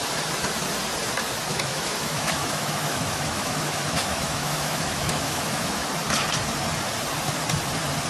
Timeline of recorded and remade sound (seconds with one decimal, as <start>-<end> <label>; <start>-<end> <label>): 0.0-1.5 recorded; 1.5-5.9 remade; 5.9-8.1 recorded